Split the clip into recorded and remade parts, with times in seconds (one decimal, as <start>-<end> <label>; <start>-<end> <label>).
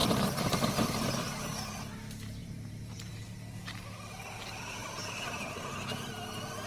0.0-2.4 recorded; 2.4-3.1 remade; 3.1-4.8 recorded; 4.8-5.5 remade; 5.5-6.7 recorded